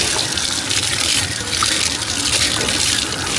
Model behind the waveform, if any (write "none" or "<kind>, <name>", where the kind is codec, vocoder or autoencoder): none